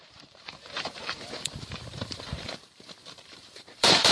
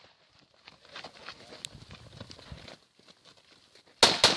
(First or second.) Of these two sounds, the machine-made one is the first